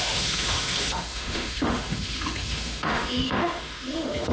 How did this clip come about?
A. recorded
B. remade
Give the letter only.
B